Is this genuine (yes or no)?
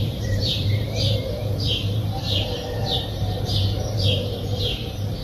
no